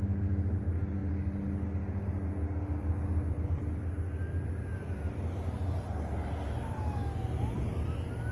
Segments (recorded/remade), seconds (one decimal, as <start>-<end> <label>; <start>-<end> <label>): 0.0-8.3 recorded

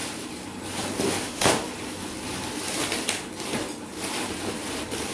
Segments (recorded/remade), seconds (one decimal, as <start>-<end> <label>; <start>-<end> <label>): 0.0-1.2 recorded; 1.2-1.6 remade; 1.6-5.1 recorded

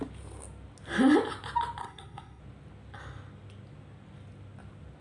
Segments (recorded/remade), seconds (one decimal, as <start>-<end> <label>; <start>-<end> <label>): 0.0-1.8 recorded; 1.8-2.4 remade; 2.4-5.0 recorded

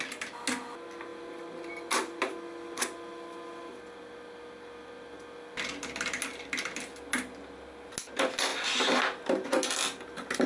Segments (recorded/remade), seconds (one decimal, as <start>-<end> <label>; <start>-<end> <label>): 0.0-10.5 recorded

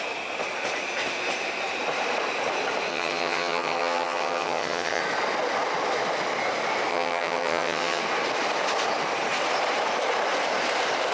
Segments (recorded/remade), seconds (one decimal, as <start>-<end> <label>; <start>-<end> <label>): 0.0-2.9 recorded; 2.9-5.0 remade; 5.0-6.9 recorded; 6.9-8.0 remade; 8.0-11.1 recorded